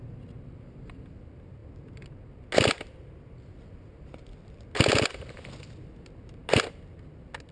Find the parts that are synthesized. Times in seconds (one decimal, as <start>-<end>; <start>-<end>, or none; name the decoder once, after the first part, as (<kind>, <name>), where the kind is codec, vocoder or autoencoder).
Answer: none